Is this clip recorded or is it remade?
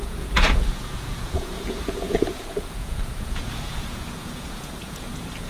remade